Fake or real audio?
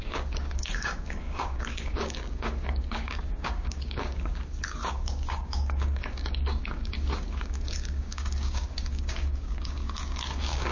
fake